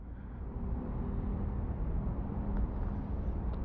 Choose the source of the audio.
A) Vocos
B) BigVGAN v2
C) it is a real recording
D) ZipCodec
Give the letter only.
C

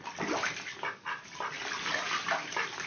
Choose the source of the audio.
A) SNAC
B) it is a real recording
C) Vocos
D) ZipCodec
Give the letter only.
B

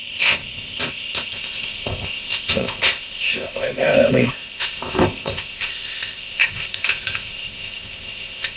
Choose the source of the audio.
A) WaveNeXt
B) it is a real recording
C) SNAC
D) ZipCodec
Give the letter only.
D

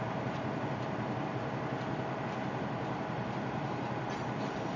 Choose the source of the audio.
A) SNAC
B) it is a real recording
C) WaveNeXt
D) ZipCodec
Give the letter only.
B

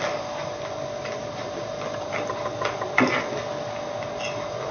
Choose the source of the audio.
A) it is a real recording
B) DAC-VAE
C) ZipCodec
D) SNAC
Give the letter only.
A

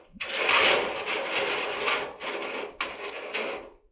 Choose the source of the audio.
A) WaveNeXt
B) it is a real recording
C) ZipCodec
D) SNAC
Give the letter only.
B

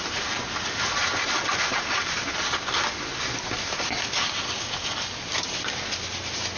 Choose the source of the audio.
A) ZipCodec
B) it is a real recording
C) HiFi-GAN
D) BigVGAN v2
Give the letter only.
B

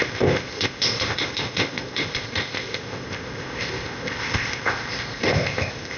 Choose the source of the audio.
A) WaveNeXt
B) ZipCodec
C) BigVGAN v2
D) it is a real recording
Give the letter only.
B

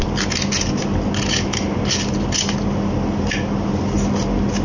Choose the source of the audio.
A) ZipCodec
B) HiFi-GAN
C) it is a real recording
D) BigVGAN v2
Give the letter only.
C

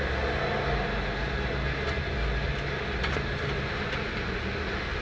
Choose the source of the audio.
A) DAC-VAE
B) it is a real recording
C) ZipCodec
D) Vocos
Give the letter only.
B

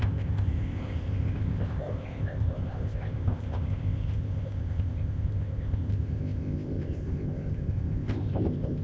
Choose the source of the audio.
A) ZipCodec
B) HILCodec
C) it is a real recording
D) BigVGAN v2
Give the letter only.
A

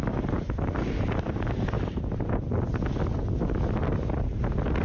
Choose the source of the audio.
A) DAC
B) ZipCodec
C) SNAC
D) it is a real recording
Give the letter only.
D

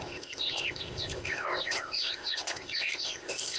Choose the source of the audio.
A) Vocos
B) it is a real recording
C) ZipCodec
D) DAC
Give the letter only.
C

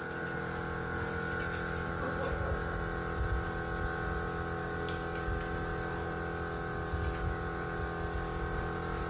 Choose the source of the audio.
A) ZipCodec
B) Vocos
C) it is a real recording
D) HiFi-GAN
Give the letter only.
C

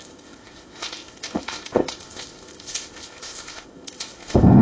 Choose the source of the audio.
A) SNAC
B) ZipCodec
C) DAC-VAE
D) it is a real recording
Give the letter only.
B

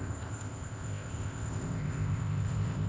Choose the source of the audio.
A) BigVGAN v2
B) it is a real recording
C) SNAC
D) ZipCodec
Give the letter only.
D